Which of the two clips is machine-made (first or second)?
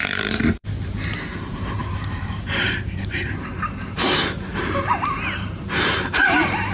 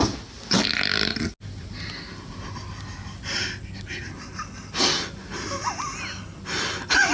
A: first